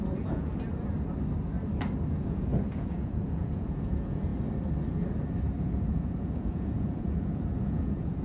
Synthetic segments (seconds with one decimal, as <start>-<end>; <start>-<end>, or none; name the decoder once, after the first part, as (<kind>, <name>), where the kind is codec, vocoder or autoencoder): 0.0-0.5 (vocoder, Vocos); 2.1-4.3; 5.6-8.2